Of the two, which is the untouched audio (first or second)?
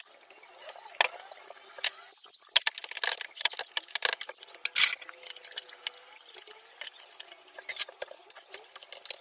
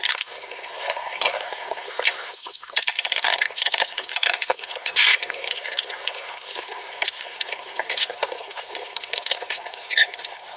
first